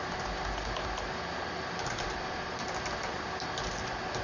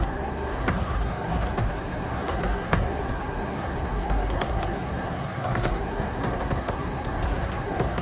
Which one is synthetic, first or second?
second